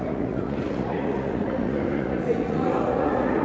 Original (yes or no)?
no